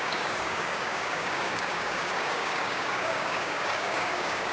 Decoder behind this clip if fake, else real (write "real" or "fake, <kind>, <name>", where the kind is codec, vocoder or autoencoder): fake, codec, DAC